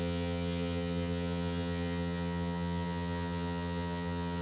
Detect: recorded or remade remade